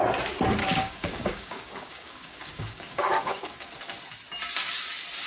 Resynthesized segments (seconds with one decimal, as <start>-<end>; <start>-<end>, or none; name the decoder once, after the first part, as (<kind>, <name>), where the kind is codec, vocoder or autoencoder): 0.6-3.7 (codec, DAC)